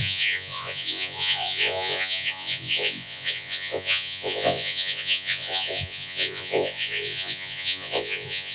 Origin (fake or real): fake